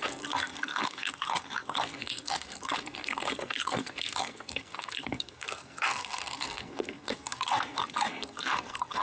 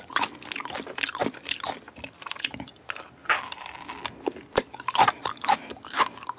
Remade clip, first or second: first